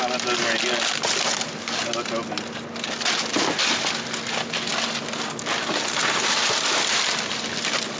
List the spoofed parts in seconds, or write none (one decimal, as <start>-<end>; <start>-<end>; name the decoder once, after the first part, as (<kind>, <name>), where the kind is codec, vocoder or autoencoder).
none